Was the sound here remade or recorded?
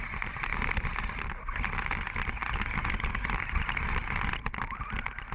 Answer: recorded